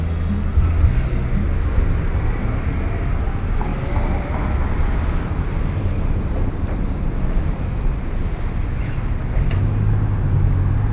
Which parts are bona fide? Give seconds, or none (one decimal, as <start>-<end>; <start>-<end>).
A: 0.0-10.9